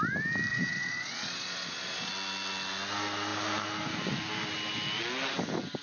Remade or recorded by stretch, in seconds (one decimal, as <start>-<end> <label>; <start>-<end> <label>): 0.0-0.5 recorded; 0.5-2.1 remade; 2.1-5.8 recorded